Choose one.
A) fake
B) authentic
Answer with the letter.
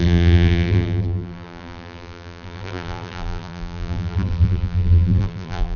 A